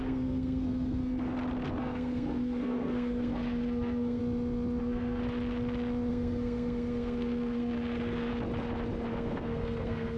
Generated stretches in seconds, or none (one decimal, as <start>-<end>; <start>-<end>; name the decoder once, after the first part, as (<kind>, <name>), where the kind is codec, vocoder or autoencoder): 0.0-1.0 (codec, SNAC); 1.8-4.2; 4.8-5.2; 6.1-8.3; 9.1-10.2